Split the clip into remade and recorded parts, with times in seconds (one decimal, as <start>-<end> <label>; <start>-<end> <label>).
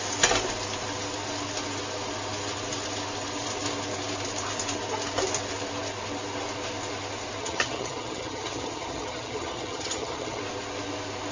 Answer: 0.0-7.4 recorded; 7.4-10.4 remade; 10.4-11.3 recorded